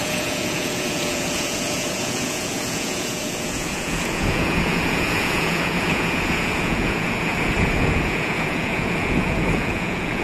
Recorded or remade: remade